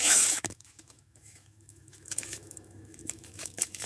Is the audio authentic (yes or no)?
no